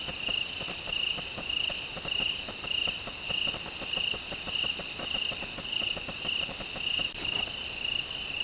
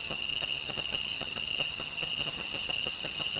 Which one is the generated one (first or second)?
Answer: second